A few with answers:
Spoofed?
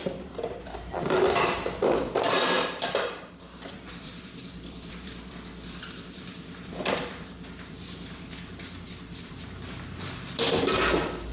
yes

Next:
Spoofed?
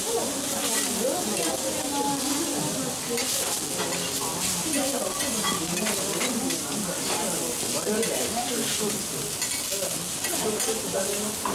no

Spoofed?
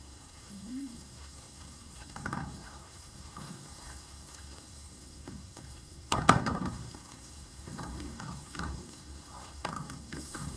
yes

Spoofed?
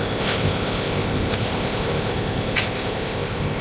yes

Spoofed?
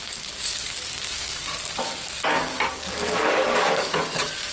yes